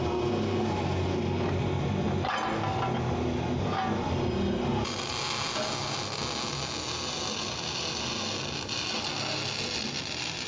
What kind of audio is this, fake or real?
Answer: real